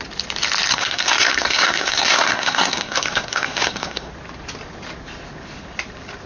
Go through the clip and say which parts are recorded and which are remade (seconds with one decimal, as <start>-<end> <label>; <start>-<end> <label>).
0.0-0.7 recorded; 0.7-4.1 remade; 4.1-6.3 recorded